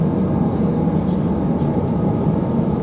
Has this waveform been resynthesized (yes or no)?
no